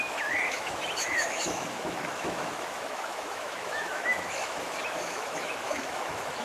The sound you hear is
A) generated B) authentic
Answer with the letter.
A